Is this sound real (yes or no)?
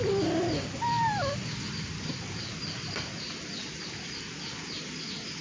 yes